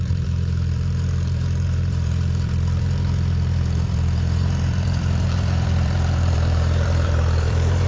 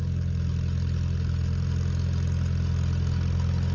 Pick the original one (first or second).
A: second